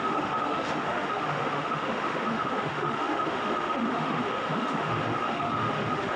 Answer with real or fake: fake